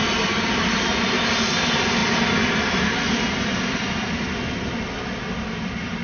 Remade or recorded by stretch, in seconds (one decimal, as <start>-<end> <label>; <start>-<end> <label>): 0.0-6.0 recorded